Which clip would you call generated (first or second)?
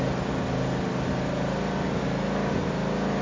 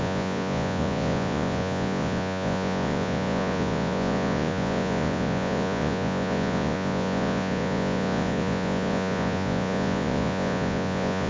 second